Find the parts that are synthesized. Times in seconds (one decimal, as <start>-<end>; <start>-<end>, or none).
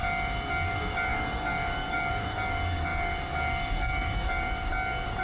0.0-5.2